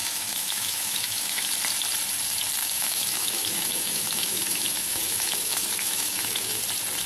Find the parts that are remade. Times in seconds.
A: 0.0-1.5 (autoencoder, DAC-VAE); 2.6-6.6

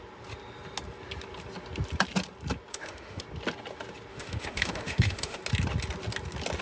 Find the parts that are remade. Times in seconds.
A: 2.7-3.2 (autoencoder, DAC-VAE); 4.1-5.4

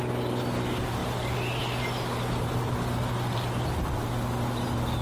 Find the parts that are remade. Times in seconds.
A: none

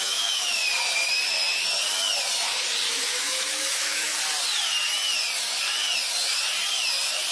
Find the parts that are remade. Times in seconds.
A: 0.0-0.6 (autoencoder, DAC-VAE); 2.9-4.1